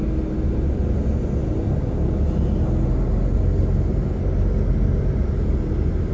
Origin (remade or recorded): recorded